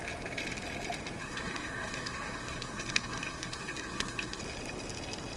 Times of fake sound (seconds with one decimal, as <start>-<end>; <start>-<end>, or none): 1.2-4.4